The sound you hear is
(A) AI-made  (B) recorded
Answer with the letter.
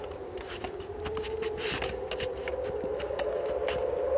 B